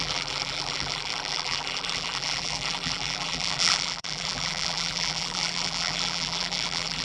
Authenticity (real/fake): fake